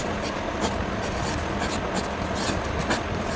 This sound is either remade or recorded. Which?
recorded